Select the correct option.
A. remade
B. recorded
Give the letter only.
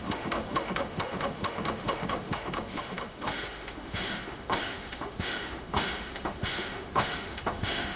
A